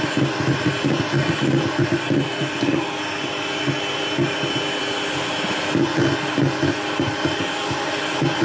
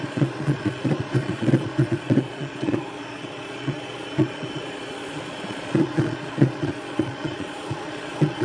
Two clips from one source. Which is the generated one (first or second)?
second